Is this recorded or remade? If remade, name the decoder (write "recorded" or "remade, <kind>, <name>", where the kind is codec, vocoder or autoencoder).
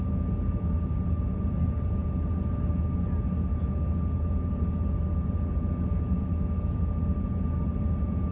recorded